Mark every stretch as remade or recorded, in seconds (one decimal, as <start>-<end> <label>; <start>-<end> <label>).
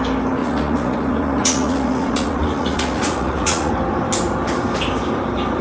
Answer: 0.0-0.4 recorded; 0.4-3.7 remade; 3.7-5.6 recorded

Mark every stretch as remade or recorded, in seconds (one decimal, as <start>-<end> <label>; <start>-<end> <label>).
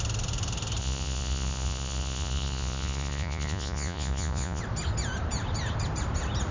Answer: 0.0-0.8 recorded; 0.8-4.6 remade; 4.6-6.5 recorded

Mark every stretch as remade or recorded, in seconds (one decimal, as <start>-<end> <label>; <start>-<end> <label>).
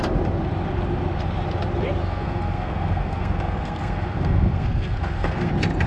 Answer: 0.0-2.0 recorded; 2.0-5.5 remade; 5.5-5.9 recorded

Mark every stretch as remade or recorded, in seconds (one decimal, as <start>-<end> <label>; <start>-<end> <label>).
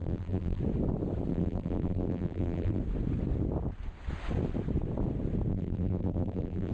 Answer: 0.0-0.6 remade; 0.6-1.3 recorded; 1.3-2.8 remade; 2.8-5.5 recorded; 5.5-6.7 remade